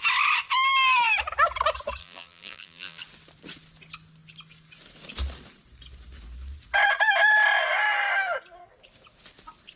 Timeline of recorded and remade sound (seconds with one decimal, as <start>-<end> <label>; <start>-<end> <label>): 0.0-2.0 recorded; 2.0-3.0 remade; 3.0-9.8 recorded